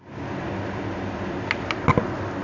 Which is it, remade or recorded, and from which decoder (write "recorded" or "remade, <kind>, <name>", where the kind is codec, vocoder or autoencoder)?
recorded